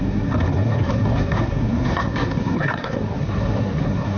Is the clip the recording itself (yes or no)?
no